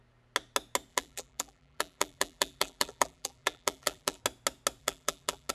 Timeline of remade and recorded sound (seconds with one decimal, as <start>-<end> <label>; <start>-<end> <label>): 0.0-0.9 recorded; 0.9-4.2 remade; 4.2-4.8 recorded; 4.8-5.5 remade